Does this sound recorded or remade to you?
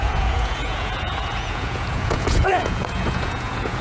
remade